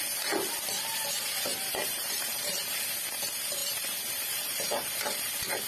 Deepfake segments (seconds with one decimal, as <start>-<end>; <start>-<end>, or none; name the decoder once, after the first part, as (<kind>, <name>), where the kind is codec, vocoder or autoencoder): 1.5-2.8 (vocoder, BigVGAN v2); 3.6-4.9